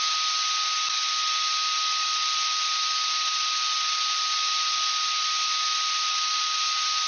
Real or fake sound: real